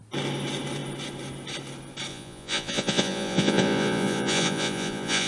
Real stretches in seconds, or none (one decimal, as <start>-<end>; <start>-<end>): 0.0-2.1